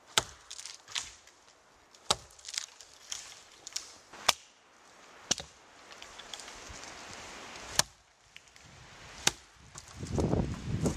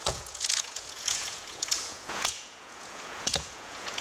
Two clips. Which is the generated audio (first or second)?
second